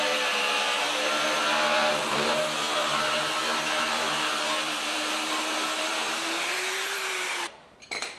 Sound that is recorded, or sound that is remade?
remade